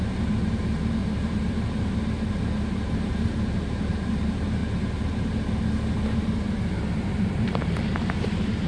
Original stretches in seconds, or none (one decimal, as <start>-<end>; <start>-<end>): 4.6-5.9